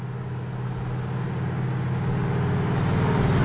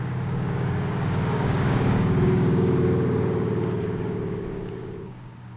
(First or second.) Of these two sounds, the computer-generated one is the second